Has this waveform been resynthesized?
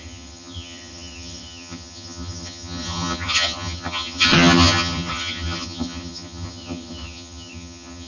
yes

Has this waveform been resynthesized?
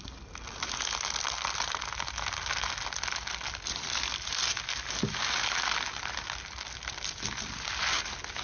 no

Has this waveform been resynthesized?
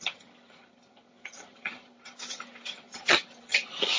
yes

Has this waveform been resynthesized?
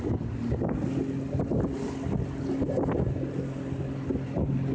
no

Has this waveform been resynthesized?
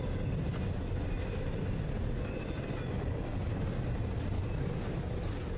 no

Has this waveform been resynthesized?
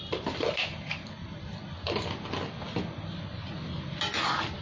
no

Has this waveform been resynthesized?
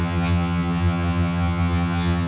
yes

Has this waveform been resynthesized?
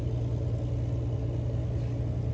no